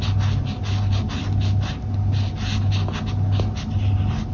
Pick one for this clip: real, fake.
real